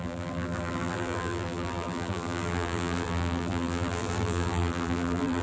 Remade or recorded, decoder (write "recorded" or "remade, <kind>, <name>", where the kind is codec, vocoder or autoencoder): remade, vocoder, BigVGAN v2